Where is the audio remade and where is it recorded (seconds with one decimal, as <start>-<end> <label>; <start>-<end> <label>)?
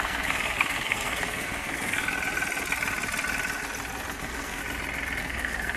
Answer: 0.0-2.0 remade; 2.0-4.1 recorded; 4.1-4.6 remade; 4.6-5.2 recorded; 5.2-5.8 remade